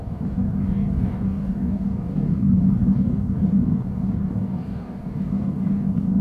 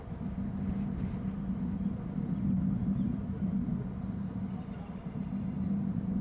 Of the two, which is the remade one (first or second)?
first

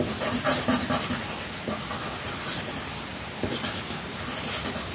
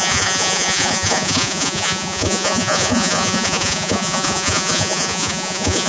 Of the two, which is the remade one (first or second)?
second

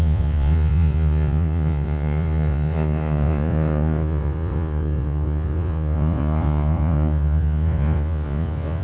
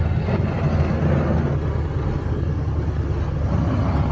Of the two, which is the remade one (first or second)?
first